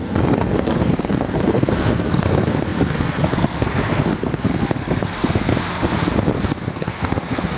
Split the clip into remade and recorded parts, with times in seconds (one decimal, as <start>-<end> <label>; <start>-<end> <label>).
0.0-5.5 remade; 5.5-6.7 recorded; 6.7-7.6 remade